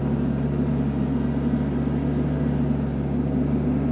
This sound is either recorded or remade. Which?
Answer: recorded